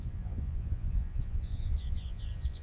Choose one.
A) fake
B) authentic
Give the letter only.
A